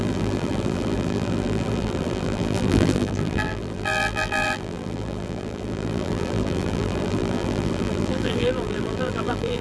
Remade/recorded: remade